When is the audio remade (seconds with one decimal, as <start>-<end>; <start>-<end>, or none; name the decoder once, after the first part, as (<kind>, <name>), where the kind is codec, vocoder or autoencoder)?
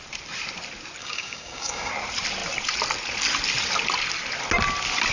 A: 1.0-1.9 (codec, DAC)